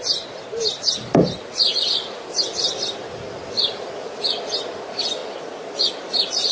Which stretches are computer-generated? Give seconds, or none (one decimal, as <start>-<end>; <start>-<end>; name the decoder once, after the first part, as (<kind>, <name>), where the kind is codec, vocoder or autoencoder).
none